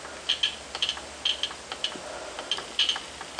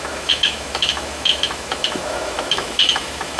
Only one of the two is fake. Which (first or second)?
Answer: second